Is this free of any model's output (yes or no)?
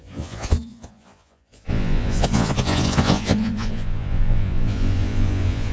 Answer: no